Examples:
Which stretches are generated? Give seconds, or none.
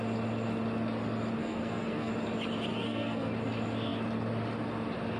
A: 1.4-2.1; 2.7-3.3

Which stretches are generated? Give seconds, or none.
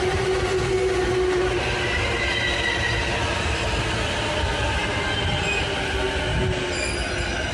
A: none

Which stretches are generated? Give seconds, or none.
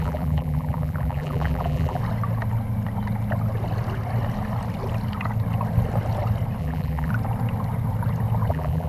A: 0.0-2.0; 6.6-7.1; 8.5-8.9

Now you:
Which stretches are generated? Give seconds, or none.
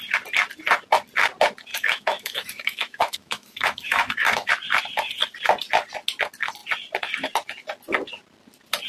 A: 1.7-4.5